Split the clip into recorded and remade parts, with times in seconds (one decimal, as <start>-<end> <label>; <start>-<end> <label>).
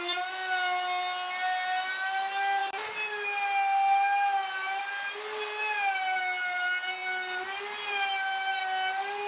0.0-9.3 recorded